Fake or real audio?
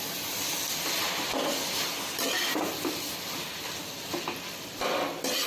real